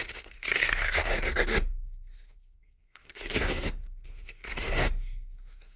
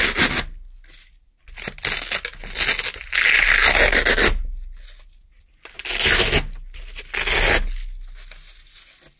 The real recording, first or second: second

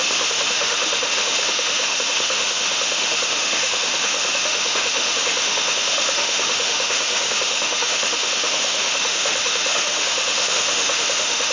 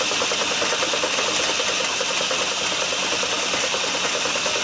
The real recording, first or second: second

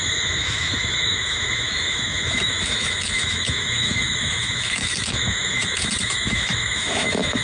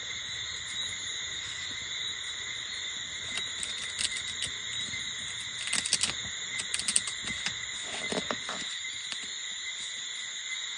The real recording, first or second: second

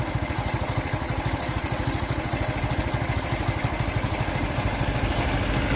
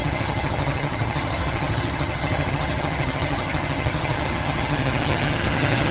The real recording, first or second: first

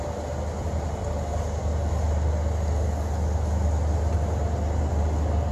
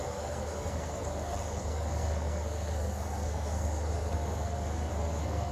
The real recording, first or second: first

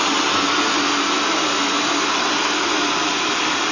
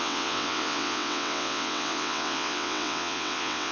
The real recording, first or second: first